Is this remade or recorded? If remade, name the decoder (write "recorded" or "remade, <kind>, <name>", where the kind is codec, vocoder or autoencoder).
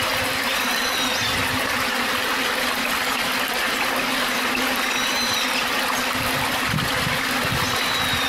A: recorded